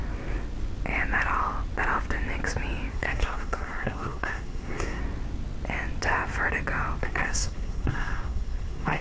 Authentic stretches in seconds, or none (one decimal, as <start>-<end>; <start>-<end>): 0.0-2.9; 5.0-7.0